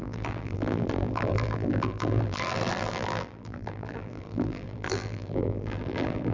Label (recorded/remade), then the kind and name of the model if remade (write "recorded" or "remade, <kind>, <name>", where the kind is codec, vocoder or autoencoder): remade, vocoder, BigVGAN v2